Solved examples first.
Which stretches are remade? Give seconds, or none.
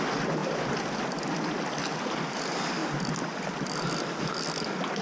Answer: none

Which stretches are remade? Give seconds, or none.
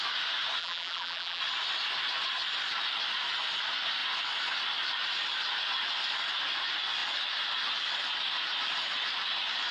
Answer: 0.6-1.4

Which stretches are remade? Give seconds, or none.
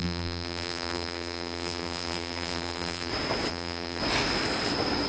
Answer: 0.0-3.1; 3.5-4.0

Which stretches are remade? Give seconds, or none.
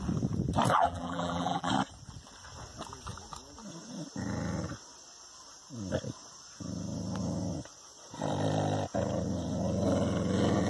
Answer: 0.7-1.7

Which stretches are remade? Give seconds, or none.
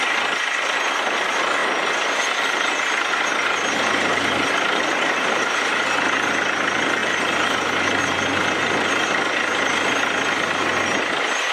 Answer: 4.1-6.2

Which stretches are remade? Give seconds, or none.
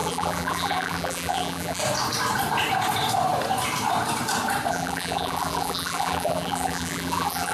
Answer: 0.0-1.8; 4.7-7.5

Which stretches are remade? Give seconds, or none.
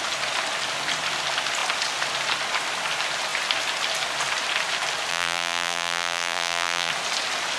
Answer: 5.1-6.9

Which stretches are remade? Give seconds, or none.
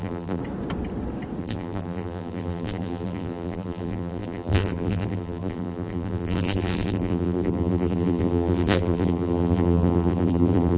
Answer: 0.0-0.4; 1.4-10.8